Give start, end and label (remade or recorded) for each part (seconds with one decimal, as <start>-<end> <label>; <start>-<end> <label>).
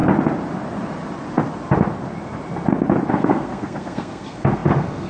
0.0-3.1 recorded; 3.1-5.1 remade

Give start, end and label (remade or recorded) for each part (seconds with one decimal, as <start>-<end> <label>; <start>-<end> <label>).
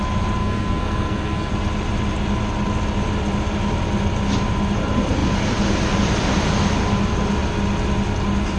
0.0-0.4 recorded; 0.4-1.5 remade; 1.5-8.6 recorded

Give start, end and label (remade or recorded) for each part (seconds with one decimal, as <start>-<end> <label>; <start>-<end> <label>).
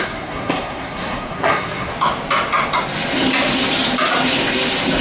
0.0-1.9 remade; 1.9-5.0 recorded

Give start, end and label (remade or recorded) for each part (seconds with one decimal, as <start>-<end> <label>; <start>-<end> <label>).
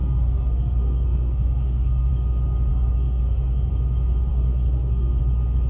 0.0-2.1 remade; 2.1-2.7 recorded; 2.7-3.7 remade; 3.7-4.3 recorded; 4.3-5.2 remade; 5.2-5.7 recorded